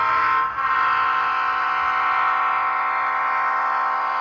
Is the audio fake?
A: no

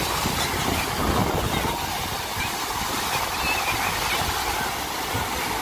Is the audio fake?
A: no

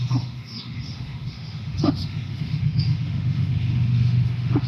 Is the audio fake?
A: yes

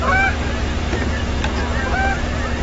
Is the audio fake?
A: no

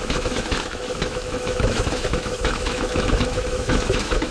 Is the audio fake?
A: yes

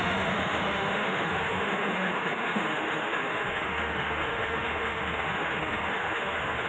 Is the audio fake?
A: yes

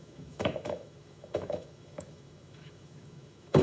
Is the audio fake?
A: yes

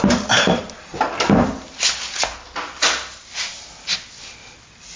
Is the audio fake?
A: no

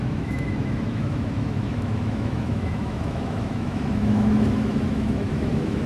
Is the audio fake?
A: yes